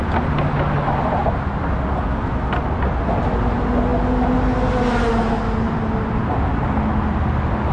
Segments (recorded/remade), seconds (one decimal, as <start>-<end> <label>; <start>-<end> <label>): 0.0-7.7 recorded